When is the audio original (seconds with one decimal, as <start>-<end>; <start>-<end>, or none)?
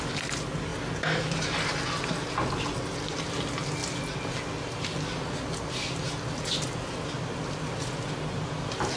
0.0-9.0